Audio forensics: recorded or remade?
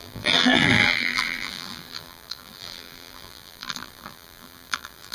remade